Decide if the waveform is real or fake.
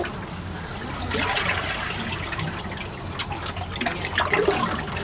real